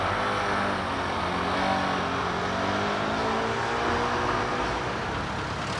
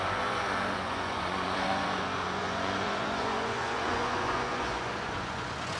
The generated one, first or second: second